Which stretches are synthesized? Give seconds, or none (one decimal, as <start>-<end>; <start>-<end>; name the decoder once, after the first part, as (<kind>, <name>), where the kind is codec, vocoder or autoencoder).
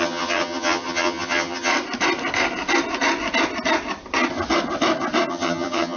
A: 0.0-1.7 (vocoder, HiFi-GAN); 5.3-6.0